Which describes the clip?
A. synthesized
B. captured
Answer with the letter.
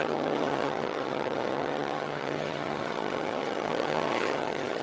A